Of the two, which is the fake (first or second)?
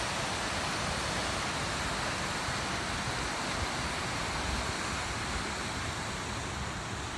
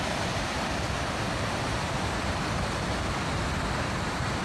second